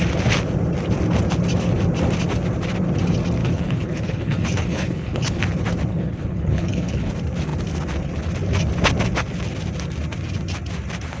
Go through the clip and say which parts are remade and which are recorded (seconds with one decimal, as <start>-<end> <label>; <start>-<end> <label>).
0.0-3.4 recorded; 3.4-5.4 remade; 5.4-5.9 recorded; 5.9-7.1 remade; 7.1-11.2 recorded